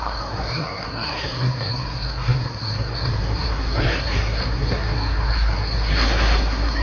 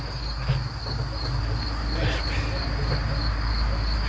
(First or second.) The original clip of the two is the second